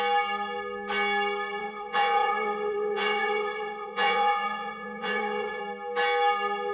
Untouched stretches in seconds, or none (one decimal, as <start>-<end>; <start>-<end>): 0.0-1.6; 5.6-6.7